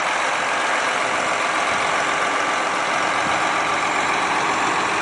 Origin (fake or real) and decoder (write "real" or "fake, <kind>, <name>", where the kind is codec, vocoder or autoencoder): real